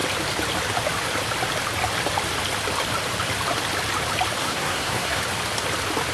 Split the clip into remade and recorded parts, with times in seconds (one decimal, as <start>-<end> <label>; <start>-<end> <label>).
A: 0.0-4.4 recorded; 4.4-5.2 remade; 5.2-6.1 recorded

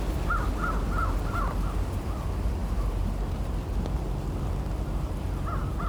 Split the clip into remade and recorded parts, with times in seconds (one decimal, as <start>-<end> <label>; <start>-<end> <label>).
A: 0.0-5.9 recorded

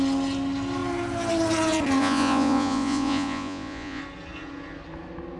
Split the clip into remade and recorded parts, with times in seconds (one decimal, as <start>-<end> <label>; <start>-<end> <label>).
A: 0.0-2.0 recorded; 2.0-4.0 remade; 4.0-5.4 recorded

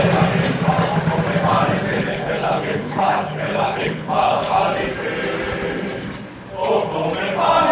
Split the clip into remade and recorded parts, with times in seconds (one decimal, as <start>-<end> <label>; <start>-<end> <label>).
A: 0.0-1.9 recorded; 1.9-4.6 remade; 4.6-7.7 recorded

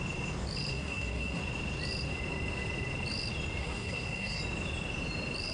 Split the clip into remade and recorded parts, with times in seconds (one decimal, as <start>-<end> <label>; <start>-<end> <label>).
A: 0.0-0.7 recorded; 0.7-1.4 remade; 1.4-3.6 recorded; 3.6-4.4 remade; 4.4-5.5 recorded

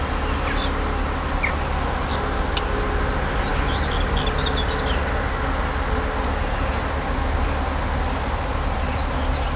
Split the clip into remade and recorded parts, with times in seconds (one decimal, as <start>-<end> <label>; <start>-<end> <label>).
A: 0.0-9.6 recorded

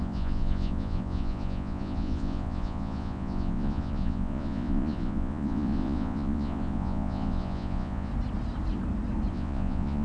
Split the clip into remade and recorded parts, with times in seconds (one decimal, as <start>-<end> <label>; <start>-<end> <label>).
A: 0.0-8.1 remade; 8.1-9.3 recorded; 9.3-10.0 remade

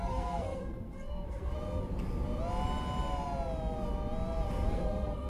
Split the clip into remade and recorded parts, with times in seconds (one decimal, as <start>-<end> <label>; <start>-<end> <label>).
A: 0.0-1.5 remade; 1.5-4.7 recorded; 4.7-5.3 remade